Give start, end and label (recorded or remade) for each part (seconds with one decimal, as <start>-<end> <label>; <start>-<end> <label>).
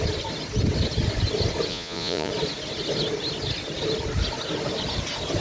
0.0-1.7 recorded; 1.7-2.3 remade; 2.3-5.4 recorded